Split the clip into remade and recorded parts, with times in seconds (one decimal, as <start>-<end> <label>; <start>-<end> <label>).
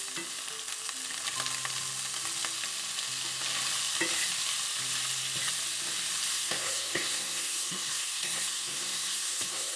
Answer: 0.0-6.3 recorded; 6.3-9.8 remade